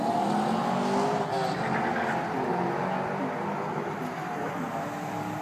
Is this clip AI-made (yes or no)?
no